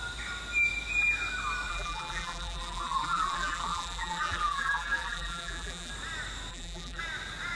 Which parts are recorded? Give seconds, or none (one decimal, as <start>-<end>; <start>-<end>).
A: 0.0-1.7; 5.9-6.5; 7.0-7.6